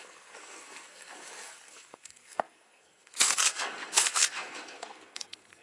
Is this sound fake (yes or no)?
yes